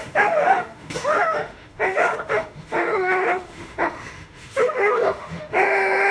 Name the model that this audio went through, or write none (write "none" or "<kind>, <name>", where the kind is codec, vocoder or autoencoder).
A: autoencoder, DAC-VAE